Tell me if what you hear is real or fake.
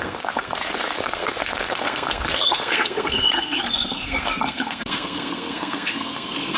fake